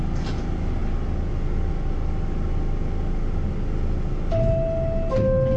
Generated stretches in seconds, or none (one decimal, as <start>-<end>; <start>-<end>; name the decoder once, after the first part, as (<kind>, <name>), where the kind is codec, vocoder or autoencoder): none